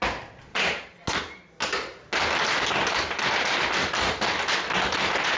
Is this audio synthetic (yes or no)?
no